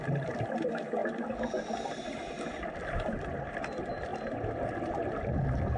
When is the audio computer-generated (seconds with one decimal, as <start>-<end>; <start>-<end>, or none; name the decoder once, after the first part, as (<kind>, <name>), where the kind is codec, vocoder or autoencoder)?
0.0-4.1 (vocoder, BigVGAN v2); 4.9-5.8